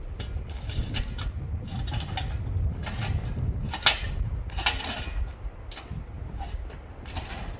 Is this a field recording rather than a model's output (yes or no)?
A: yes